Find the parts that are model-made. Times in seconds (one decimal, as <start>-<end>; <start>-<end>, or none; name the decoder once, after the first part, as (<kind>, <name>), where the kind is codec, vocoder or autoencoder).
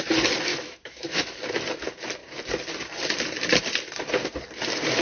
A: 0.5-1.6 (autoencoder, DAC-VAE)